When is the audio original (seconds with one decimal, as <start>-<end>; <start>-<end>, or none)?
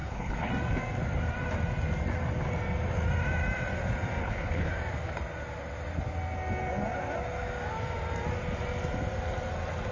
0.5-4.2; 4.7-9.9